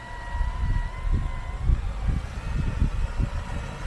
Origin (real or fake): real